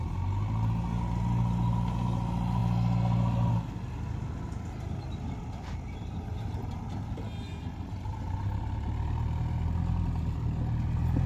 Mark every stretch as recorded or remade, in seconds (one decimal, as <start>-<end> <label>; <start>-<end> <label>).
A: 0.0-11.3 recorded

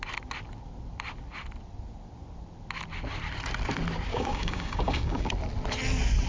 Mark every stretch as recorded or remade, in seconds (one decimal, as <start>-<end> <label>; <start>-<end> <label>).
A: 0.0-4.1 recorded; 4.1-5.3 remade; 5.3-6.3 recorded

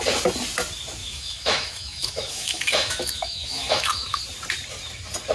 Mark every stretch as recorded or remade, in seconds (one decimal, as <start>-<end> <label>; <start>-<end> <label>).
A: 0.0-1.0 recorded; 1.0-4.2 remade; 4.2-5.3 recorded

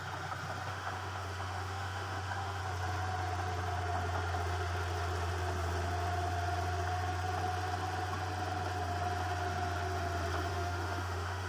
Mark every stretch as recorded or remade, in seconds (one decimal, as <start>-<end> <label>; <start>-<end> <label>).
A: 0.0-0.7 recorded; 0.7-2.6 remade; 2.6-10.5 recorded; 10.5-11.5 remade

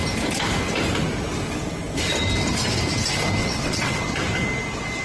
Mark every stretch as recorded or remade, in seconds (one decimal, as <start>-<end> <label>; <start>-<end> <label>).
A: 0.0-3.4 recorded; 3.4-4.0 remade; 4.0-5.0 recorded

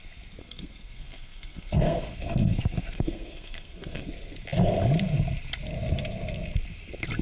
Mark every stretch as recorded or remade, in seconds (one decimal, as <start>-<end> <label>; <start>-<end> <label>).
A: 0.0-0.4 recorded; 0.4-4.1 remade; 4.1-7.2 recorded